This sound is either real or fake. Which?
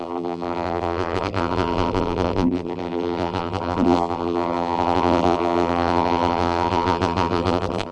fake